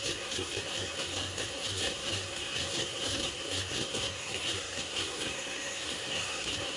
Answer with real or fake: fake